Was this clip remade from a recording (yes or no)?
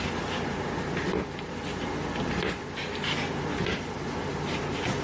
no